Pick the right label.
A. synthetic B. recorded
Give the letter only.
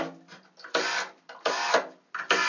B